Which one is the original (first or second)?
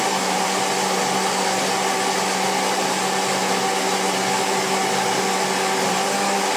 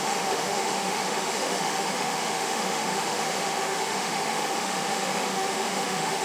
first